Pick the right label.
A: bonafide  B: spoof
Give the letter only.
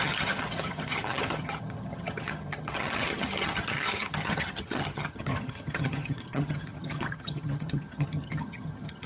B